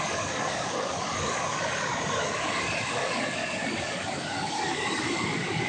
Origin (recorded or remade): remade